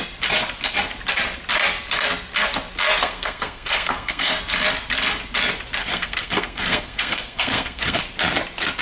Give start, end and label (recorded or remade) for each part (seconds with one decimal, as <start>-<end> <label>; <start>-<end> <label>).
0.0-3.0 recorded; 3.0-4.4 remade; 4.4-5.8 recorded; 5.8-8.0 remade; 8.0-8.8 recorded